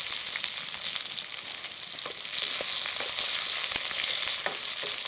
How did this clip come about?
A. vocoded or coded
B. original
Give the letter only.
B